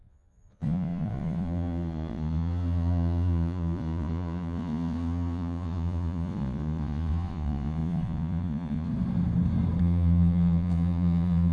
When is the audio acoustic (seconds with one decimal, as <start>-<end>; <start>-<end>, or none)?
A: 8.9-9.8